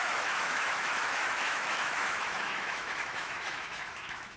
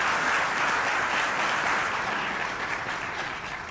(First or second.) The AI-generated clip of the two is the first